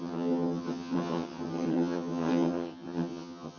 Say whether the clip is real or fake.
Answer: fake